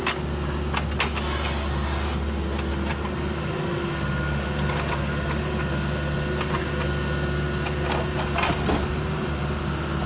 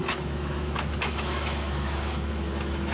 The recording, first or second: first